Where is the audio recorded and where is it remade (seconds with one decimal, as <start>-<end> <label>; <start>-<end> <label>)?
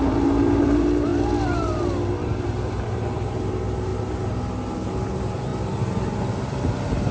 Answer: 0.0-3.9 remade; 3.9-4.9 recorded; 4.9-5.5 remade; 5.5-6.3 recorded; 6.3-7.1 remade